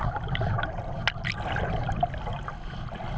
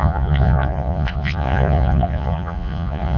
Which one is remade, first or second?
second